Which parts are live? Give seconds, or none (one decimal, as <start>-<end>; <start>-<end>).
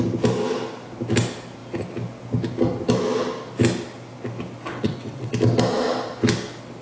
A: 0.0-4.7; 5.3-6.8